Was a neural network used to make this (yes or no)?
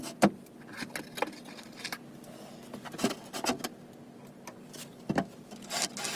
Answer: no